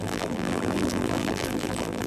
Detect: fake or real fake